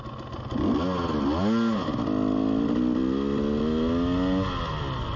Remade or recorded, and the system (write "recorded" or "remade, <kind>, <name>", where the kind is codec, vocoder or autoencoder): recorded